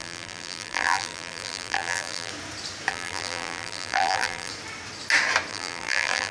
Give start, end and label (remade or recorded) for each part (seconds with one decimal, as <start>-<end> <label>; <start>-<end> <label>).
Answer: 0.0-2.3 remade; 2.3-2.9 recorded; 2.9-4.5 remade; 4.5-5.5 recorded; 5.5-6.3 remade